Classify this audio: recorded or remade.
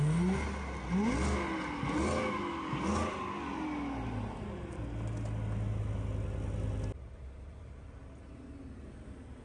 recorded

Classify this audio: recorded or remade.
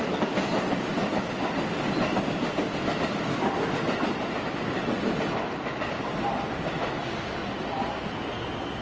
recorded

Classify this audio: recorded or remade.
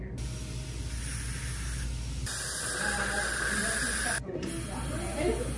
recorded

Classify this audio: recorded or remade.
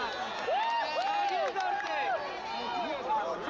recorded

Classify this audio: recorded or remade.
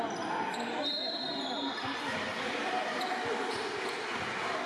recorded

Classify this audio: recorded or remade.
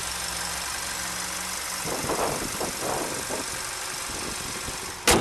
recorded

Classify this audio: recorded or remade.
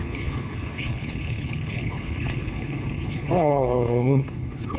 remade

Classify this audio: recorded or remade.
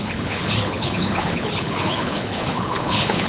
remade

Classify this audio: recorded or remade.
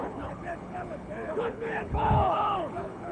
remade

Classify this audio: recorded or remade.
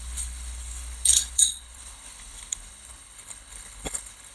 remade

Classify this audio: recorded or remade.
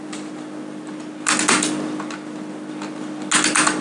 recorded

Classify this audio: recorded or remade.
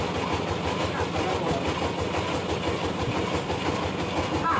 recorded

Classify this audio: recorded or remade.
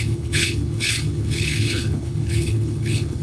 remade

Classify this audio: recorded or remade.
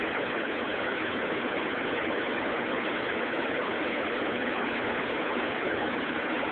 remade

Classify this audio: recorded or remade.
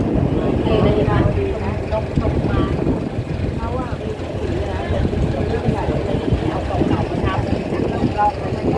recorded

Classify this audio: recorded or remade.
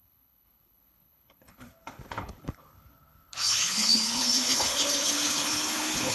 remade